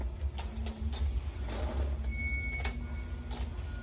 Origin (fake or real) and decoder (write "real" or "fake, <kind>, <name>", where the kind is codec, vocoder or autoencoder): real